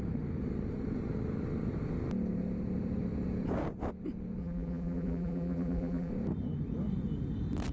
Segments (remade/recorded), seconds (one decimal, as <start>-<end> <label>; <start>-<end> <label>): 0.0-4.4 recorded; 4.4-6.1 remade; 6.1-7.7 recorded